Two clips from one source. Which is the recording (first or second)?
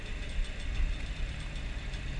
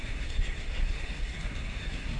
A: first